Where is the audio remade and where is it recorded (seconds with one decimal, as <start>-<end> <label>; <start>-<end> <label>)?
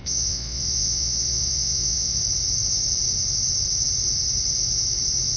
0.0-2.2 remade; 2.2-5.4 recorded